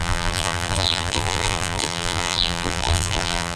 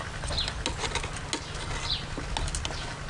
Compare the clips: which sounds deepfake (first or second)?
first